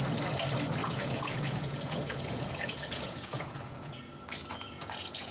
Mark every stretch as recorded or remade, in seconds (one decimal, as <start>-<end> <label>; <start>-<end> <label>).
0.0-0.8 recorded; 0.8-4.0 remade; 4.0-4.4 recorded; 4.4-5.3 remade